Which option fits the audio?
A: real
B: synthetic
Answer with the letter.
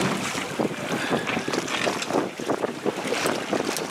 A